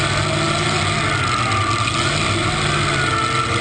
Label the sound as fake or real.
real